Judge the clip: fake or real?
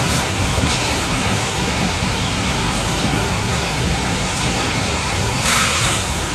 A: fake